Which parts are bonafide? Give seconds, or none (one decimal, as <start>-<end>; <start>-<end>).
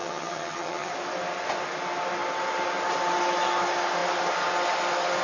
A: 0.9-5.2